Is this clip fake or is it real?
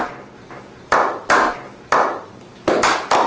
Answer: real